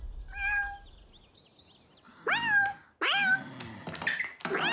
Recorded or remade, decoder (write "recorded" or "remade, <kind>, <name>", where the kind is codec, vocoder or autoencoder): recorded